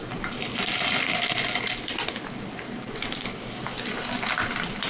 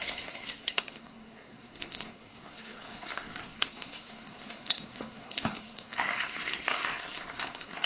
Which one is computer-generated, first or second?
second